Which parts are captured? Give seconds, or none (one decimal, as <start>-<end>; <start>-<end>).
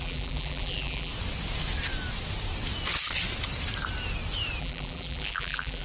1.1-4.6